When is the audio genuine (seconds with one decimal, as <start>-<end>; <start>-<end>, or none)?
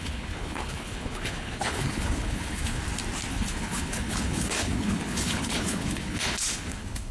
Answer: 2.8-3.3